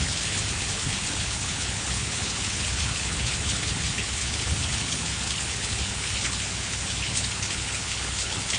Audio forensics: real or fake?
fake